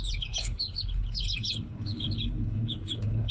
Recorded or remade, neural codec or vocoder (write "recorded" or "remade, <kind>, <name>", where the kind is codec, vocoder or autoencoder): remade, codec, HILCodec